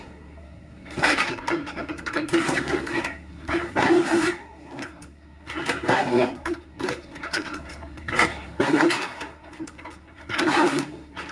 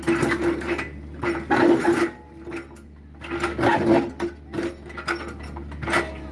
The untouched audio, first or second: second